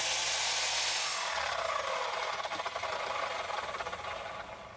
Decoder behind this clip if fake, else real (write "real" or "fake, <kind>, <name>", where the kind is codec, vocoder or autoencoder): real